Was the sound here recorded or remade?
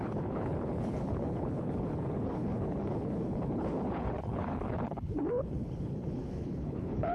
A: remade